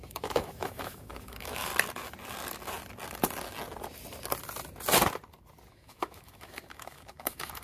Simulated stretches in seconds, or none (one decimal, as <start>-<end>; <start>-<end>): 0.0-1.7; 5.7-7.6